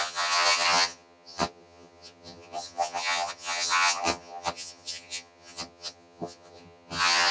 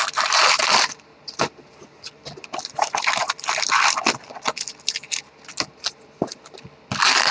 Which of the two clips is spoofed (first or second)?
first